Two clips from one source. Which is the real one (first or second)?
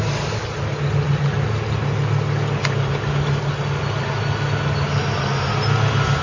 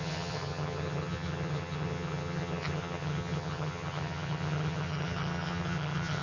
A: first